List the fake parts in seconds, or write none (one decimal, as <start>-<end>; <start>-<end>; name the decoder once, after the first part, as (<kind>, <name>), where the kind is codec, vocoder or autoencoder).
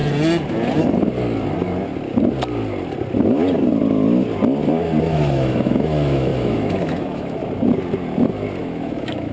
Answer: 5.0-7.4 (autoencoder, DAC-VAE); 8.6-9.3